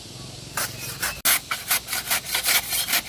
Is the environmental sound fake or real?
real